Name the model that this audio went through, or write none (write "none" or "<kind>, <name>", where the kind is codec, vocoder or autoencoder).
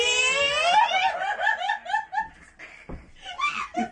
none